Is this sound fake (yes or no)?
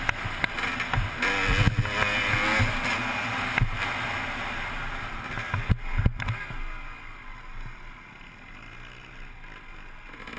no